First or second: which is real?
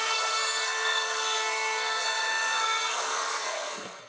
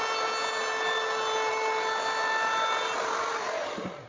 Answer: second